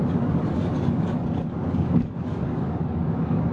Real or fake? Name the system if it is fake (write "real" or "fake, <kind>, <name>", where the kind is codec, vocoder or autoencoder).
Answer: fake, codec, DAC